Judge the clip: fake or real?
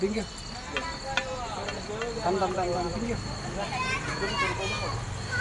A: real